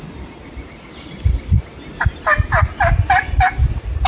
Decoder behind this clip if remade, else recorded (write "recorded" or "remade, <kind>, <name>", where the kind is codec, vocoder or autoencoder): recorded